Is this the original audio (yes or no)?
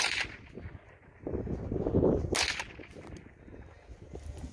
yes